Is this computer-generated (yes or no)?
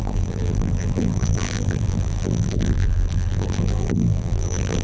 yes